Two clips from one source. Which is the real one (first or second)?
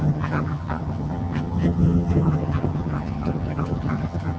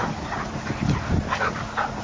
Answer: second